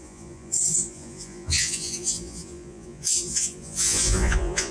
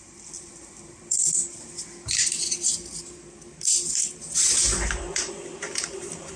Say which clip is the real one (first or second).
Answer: second